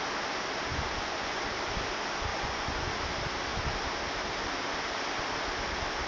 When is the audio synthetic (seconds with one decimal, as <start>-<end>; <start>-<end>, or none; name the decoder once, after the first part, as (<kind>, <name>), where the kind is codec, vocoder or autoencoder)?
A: 0.7-1.4 (vocoder, Vocos); 2.3-2.9